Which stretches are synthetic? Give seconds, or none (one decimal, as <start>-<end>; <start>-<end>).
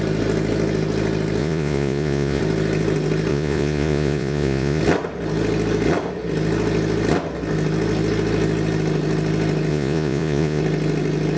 1.4-2.4; 3.3-4.8; 9.7-10.6